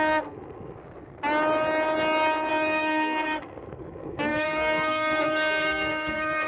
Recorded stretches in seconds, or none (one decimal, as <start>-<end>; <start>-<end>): 0.8-2.5